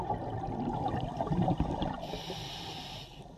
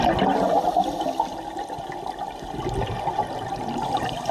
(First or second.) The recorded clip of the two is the second